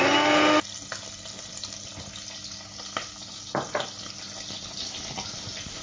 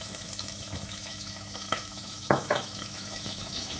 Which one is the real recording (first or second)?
first